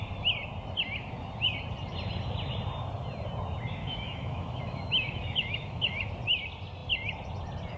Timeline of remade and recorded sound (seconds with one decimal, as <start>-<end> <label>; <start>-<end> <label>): 0.0-3.8 recorded; 3.8-6.1 remade; 6.1-7.8 recorded